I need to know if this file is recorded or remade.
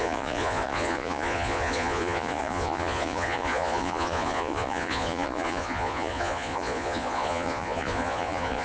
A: remade